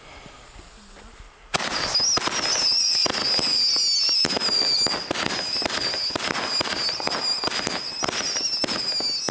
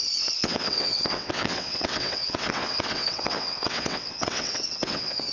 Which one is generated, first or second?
second